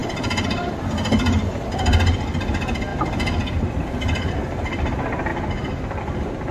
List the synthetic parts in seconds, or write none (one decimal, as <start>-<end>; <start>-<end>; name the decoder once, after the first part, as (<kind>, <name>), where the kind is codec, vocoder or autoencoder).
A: none